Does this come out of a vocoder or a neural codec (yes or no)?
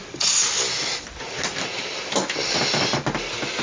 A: no